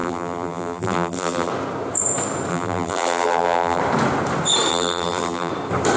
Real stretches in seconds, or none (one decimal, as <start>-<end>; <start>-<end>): 1.5-2.5; 3.8-4.7; 5.5-6.0

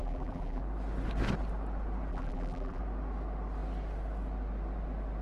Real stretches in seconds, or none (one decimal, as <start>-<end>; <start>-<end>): 0.6-2.1; 2.8-5.2